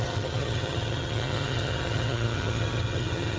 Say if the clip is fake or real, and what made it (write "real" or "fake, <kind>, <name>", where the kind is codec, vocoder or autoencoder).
fake, vocoder, HiFi-GAN